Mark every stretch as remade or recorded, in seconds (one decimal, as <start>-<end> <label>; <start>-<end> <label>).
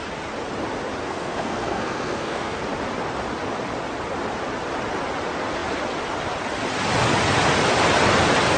0.0-1.0 recorded; 1.0-2.6 remade; 2.6-8.6 recorded